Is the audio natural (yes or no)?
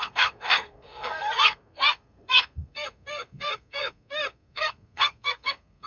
no